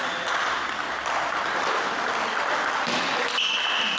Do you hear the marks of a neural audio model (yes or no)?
no